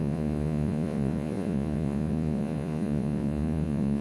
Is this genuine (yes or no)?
no